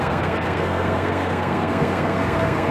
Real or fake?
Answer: fake